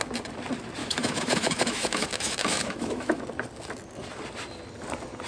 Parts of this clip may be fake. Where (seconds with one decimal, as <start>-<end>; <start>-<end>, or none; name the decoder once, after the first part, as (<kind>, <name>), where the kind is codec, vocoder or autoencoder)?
0.8-3.2 (autoencoder, DAC-VAE)